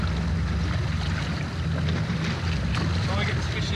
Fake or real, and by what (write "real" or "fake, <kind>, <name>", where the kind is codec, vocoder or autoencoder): real